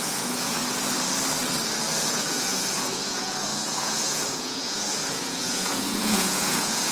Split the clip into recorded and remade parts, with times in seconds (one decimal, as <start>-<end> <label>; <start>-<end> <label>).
0.0-0.6 remade; 0.6-2.1 recorded; 2.1-6.9 remade